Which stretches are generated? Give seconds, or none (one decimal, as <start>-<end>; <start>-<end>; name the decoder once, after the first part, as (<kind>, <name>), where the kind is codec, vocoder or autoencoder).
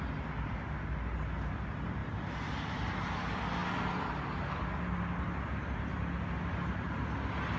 2.0-2.9 (vocoder, BigVGAN v2)